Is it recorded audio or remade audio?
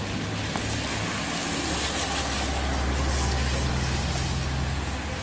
recorded